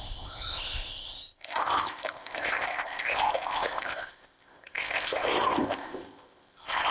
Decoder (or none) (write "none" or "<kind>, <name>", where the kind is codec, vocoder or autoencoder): codec, ZipCodec